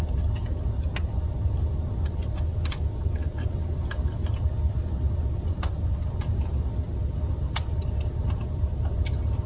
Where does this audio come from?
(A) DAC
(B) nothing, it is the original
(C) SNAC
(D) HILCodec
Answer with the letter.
B